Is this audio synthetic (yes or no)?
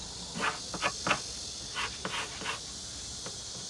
no